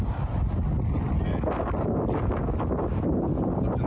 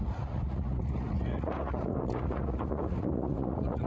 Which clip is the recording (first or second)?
first